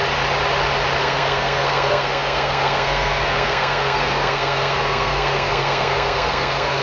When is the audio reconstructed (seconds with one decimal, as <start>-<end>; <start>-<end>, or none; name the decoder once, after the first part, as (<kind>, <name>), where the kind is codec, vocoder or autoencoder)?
1.0-6.8 (codec, SNAC)